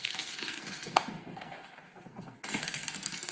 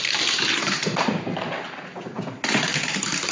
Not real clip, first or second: first